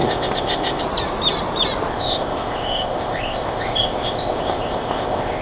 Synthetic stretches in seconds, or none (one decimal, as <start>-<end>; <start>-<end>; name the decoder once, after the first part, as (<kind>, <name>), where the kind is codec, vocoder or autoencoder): 0.0-0.8 (codec, ZipCodec); 1.9-5.4